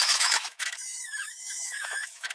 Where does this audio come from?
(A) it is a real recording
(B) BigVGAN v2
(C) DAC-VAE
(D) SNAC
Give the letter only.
C